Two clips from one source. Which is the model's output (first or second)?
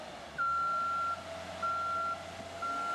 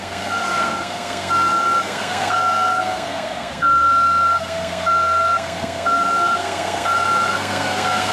second